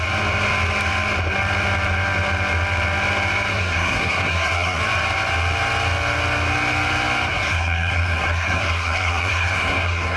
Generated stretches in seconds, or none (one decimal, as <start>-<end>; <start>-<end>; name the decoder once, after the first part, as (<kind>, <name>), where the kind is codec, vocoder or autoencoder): 3.5-4.8 (codec, SNAC); 7.3-10.2